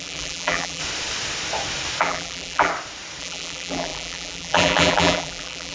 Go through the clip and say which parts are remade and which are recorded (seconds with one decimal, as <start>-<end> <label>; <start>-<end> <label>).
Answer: 0.0-0.8 remade; 0.8-2.0 recorded; 2.0-2.7 remade; 2.7-3.2 recorded; 3.2-5.7 remade